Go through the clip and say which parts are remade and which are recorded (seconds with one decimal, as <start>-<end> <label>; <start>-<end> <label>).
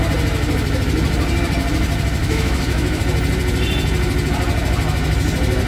0.0-2.2 recorded; 2.2-3.0 remade; 3.0-5.7 recorded